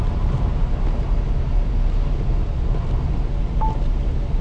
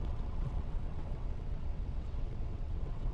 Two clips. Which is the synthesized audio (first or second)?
second